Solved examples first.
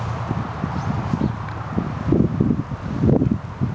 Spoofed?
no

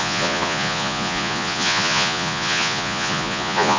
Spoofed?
yes